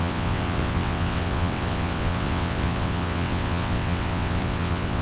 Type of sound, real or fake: fake